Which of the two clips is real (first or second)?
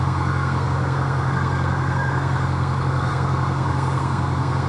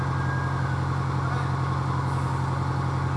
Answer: second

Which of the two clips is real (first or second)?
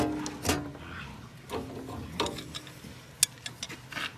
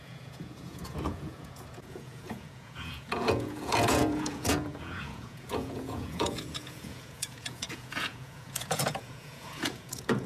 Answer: first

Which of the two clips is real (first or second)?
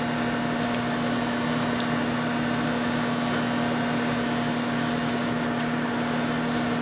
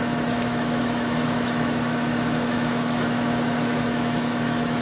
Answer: first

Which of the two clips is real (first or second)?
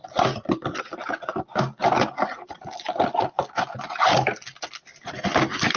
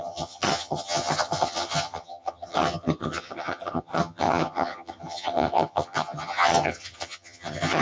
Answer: first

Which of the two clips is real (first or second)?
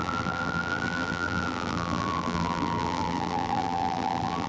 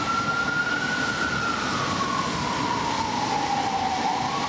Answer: second